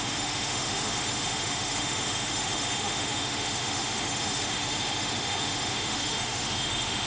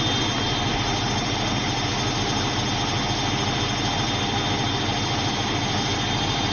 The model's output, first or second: first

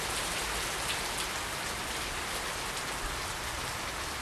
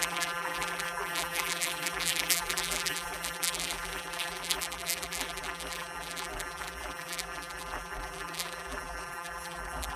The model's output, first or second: second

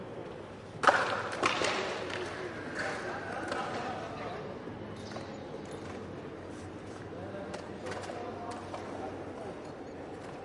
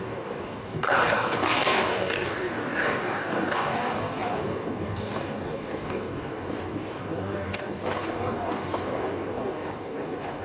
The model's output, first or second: second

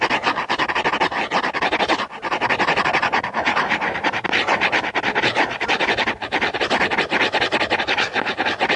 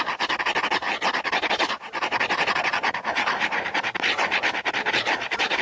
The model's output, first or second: second